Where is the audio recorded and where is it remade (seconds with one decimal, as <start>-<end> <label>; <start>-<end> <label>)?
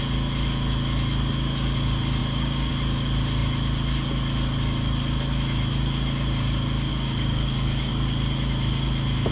0.0-2.2 recorded; 2.2-2.7 remade; 2.7-6.9 recorded; 6.9-7.9 remade; 7.9-9.3 recorded